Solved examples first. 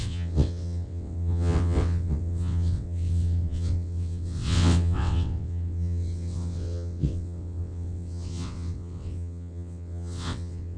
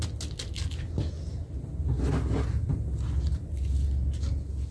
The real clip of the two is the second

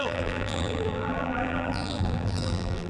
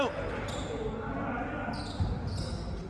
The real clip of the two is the second